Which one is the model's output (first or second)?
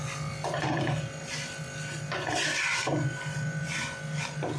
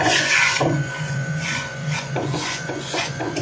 second